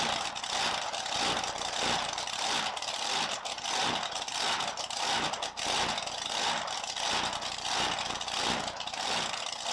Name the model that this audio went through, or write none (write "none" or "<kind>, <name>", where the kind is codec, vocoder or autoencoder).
none